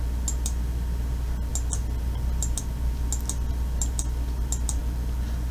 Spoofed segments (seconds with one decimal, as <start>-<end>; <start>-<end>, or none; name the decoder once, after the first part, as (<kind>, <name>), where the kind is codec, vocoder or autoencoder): none

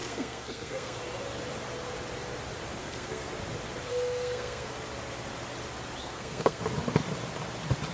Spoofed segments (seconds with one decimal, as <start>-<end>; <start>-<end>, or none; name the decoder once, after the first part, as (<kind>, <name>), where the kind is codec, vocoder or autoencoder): 0.0-1.0 (codec, SNAC); 2.8-3.3; 3.9-4.7; 6.0-6.6

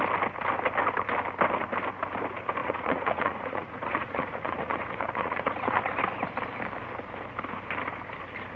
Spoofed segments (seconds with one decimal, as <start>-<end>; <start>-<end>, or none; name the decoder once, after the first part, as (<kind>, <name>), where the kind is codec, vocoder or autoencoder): 2.6-5.8 (vocoder, Vocos)

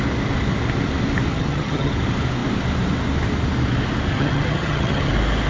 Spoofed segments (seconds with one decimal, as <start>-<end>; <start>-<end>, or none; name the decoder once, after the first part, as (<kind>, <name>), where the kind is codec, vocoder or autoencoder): 1.3-1.9 (vocoder, HiFi-GAN); 4.1-5.1

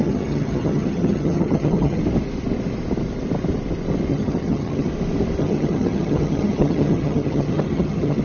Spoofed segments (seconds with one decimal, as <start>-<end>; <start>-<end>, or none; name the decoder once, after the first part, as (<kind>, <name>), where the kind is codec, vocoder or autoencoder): 0.0-2.0 (vocoder, HiFi-GAN); 4.1-4.9; 5.4-8.2

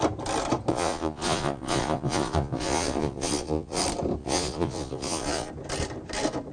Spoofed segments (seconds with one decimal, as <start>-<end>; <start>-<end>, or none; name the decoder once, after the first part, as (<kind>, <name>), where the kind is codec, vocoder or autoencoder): 0.7-3.8 (vocoder, Vocos); 4.2-5.5

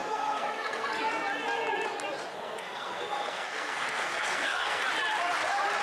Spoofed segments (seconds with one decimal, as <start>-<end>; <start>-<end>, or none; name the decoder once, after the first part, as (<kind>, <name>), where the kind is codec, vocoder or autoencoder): 0.0-1.0 (codec, SNAC); 2.3-4.8

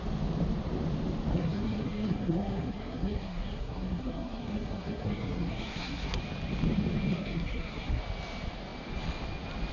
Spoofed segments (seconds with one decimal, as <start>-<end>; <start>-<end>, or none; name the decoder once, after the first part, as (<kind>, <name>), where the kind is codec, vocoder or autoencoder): 1.3-6.2 (codec, SNAC); 7.1-8.0